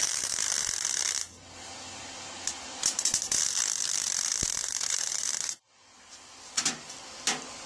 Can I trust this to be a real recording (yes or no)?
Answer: yes